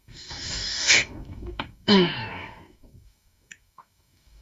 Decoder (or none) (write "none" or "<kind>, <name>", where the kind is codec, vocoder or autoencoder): codec, DAC